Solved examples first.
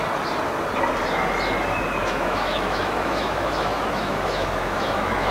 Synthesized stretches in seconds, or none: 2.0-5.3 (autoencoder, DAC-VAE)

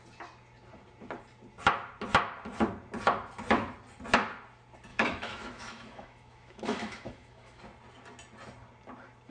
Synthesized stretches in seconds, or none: 4.9-7.6 (autoencoder, DAC-VAE)

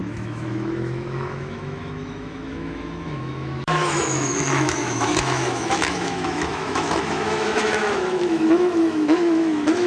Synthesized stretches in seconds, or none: 0.0-9.9 (autoencoder, DAC-VAE)

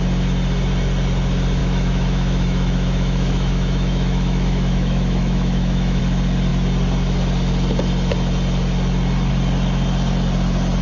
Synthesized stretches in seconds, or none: 1.6-6.0 (autoencoder, DAC-VAE)

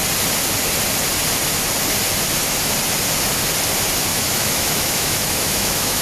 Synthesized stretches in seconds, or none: 4.1-6.0 (autoencoder, DAC-VAE)

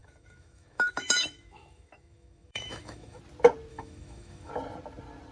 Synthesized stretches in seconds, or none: 0.0-3.2 (autoencoder, DAC-VAE); 3.7-4.5